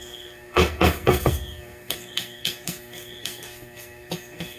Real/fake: fake